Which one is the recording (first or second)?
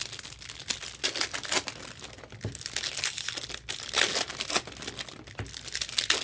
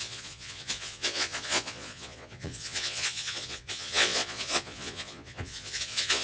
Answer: first